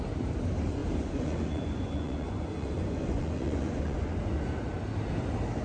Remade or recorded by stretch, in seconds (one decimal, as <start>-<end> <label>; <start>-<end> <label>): 0.0-0.8 recorded; 0.8-4.2 remade; 4.2-5.6 recorded